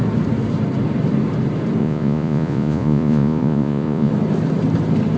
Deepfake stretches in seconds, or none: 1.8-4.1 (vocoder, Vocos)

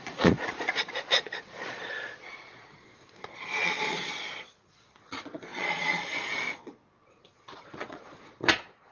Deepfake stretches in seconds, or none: 0.0-8.9 (vocoder, Vocos)